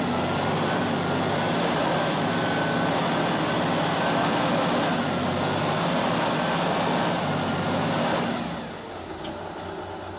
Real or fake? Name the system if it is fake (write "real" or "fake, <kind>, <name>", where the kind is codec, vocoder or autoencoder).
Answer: real